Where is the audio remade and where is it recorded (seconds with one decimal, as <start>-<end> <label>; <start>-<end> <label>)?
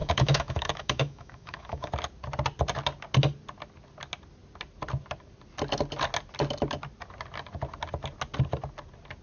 0.0-1.9 remade; 1.9-9.2 recorded